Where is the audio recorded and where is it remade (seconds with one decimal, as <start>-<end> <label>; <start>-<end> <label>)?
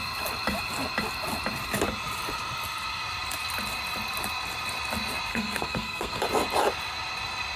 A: 0.0-5.3 recorded; 5.3-6.2 remade; 6.2-7.6 recorded